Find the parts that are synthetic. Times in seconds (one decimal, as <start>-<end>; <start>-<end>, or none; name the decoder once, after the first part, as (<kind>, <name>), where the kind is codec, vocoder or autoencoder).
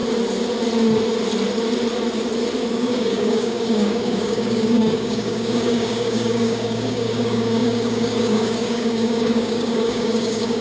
2.7-10.6 (codec, DAC)